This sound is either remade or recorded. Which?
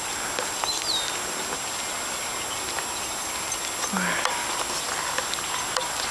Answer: recorded